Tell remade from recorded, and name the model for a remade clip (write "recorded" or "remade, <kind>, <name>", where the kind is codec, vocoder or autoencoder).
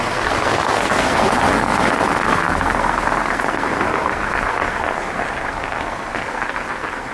remade, codec, SNAC